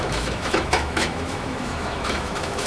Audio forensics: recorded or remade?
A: remade